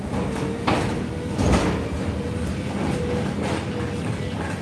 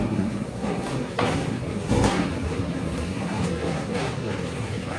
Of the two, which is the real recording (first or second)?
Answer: first